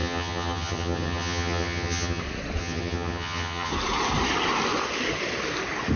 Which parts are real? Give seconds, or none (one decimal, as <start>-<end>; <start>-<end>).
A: 2.2-2.6; 3.7-6.0